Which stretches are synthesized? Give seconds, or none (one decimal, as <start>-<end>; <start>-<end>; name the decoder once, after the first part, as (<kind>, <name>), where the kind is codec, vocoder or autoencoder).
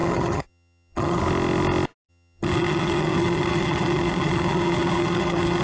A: 0.0-1.2 (vocoder, HiFi-GAN); 2.1-5.6